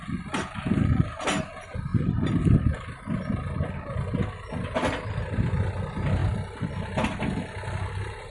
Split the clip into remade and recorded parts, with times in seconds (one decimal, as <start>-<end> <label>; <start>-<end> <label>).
0.0-8.3 recorded